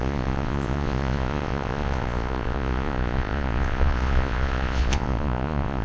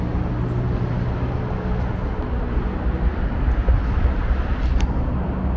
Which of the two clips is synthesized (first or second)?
first